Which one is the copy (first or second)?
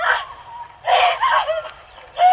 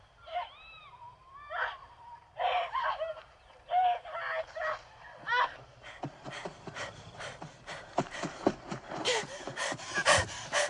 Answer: second